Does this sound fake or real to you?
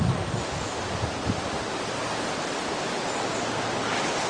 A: real